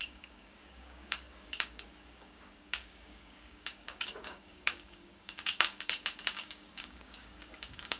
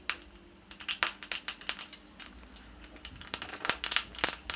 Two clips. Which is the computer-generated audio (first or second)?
first